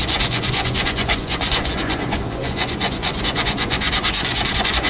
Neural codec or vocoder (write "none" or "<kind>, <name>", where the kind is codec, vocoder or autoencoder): vocoder, Vocos